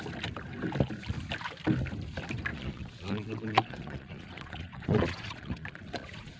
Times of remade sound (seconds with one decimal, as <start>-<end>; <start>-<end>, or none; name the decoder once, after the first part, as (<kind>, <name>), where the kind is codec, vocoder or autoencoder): 2.5-6.4 (vocoder, Vocos)